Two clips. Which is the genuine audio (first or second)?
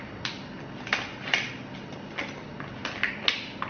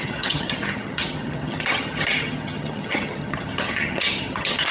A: first